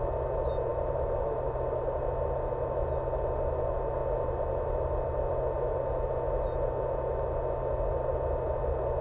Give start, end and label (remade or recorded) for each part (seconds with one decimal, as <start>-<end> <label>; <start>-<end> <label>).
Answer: 0.0-0.7 recorded; 0.7-2.0 remade; 2.0-9.0 recorded